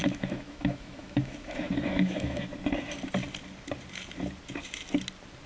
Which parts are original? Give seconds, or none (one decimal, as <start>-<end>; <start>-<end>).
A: 2.5-5.5